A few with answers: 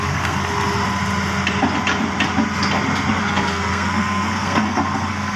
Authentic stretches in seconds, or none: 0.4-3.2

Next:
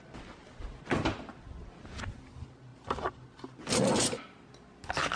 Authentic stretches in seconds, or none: 0.0-5.2